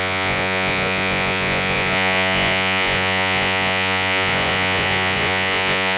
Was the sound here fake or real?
fake